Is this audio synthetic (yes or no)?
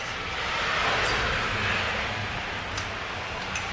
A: no